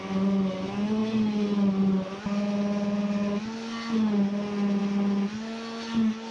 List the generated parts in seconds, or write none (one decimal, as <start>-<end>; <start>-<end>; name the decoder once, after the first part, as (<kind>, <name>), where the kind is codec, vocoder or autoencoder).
none